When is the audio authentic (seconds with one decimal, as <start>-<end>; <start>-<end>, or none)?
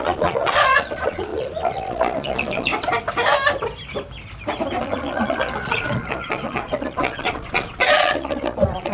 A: 2.7-4.8